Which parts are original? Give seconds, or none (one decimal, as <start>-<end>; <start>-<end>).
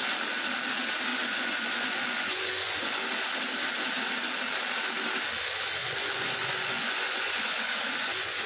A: 0.0-1.1; 3.0-5.8